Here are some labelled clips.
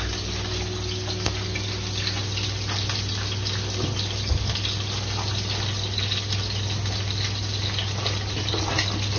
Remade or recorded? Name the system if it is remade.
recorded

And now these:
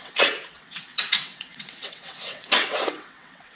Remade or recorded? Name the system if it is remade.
remade, vocoder, WaveNeXt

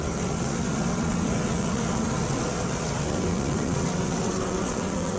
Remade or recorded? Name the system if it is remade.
remade, vocoder, WaveNeXt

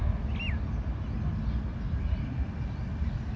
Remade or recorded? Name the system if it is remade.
recorded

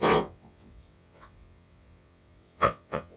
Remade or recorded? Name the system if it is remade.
remade, vocoder, WaveNeXt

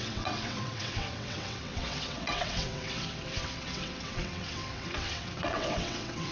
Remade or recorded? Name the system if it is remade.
remade, vocoder, WaveNeXt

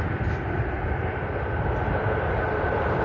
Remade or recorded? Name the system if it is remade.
recorded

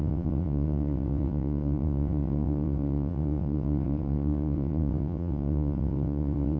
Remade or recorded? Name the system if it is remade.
remade, vocoder, WaveNeXt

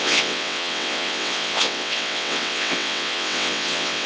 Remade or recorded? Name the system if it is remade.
remade, vocoder, WaveNeXt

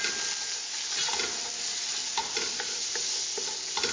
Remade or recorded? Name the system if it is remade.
recorded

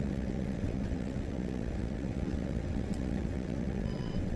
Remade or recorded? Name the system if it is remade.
remade, vocoder, WaveNeXt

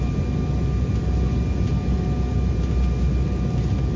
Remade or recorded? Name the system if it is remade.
recorded